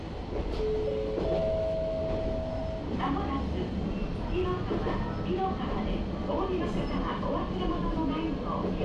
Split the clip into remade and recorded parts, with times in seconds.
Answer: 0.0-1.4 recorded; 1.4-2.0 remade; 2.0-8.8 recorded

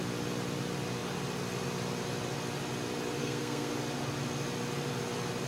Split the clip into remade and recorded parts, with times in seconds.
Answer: 0.0-3.2 recorded; 3.2-3.7 remade; 3.7-5.5 recorded